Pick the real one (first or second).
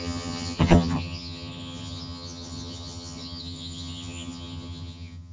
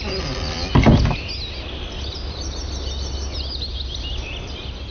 second